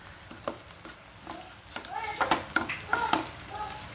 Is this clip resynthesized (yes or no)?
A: no